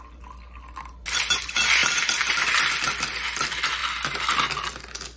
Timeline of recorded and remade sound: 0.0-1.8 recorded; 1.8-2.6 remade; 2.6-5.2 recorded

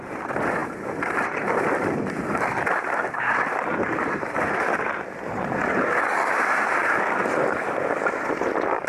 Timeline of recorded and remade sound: 0.0-6.8 remade; 6.8-8.3 recorded; 8.3-8.9 remade

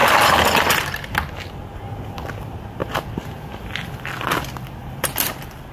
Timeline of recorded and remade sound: 0.0-0.7 remade; 0.7-4.8 recorded; 4.8-5.3 remade; 5.3-5.7 recorded

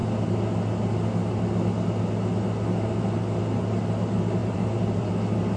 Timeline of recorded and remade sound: 0.0-4.4 recorded; 4.4-5.1 remade; 5.1-5.6 recorded

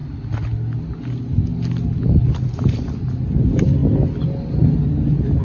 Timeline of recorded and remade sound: 0.0-3.2 recorded; 3.2-3.8 remade; 3.8-5.4 recorded

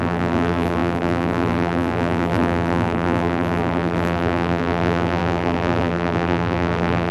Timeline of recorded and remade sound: 0.0-7.1 remade

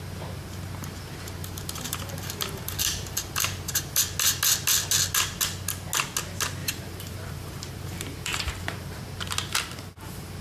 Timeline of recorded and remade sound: 0.0-1.4 recorded; 1.4-4.0 remade; 4.0-6.6 recorded; 6.6-9.0 remade; 9.0-10.4 recorded